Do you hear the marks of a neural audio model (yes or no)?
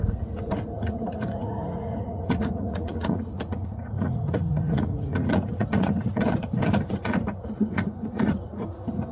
yes